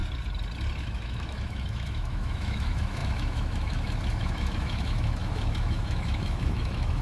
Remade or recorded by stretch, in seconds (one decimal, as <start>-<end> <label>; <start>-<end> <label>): 0.0-0.8 recorded; 0.8-7.0 remade